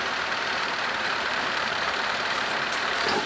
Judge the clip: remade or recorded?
remade